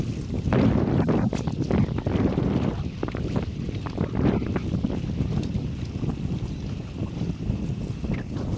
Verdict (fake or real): real